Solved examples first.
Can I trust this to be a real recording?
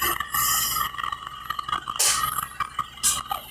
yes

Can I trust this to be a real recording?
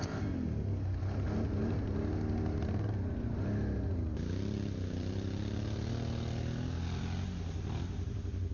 yes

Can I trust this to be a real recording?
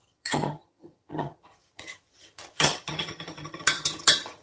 no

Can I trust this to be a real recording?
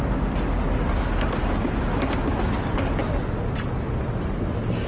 yes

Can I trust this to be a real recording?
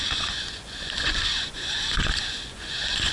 no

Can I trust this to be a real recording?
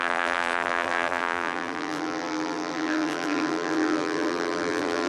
no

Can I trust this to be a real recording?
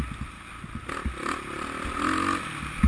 yes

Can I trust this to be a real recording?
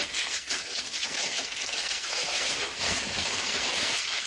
no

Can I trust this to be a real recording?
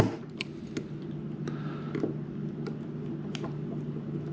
yes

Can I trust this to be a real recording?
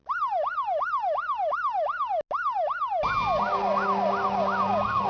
yes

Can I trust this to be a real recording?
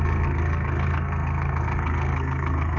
no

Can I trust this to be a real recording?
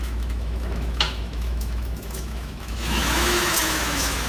no